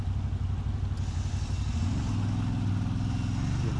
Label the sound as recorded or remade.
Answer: recorded